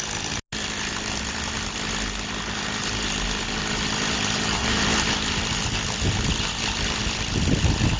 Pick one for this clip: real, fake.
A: real